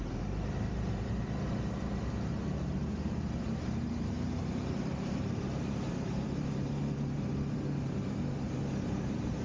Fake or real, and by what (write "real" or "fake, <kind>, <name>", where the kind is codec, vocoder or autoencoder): fake, vocoder, BigVGAN v2